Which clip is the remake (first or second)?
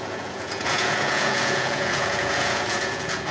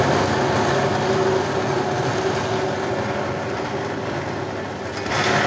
first